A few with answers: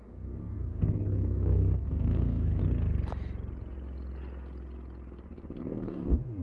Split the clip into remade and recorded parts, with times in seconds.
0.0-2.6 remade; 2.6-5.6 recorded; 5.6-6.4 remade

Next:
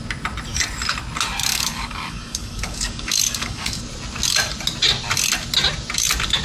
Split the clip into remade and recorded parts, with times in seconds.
0.0-1.5 recorded; 1.5-3.8 remade; 3.8-6.4 recorded

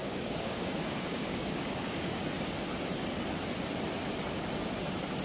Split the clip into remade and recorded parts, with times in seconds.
0.0-2.2 remade; 2.2-5.2 recorded